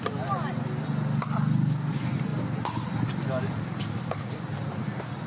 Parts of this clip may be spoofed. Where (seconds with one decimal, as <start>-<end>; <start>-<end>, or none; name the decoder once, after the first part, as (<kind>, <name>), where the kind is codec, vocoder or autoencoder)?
none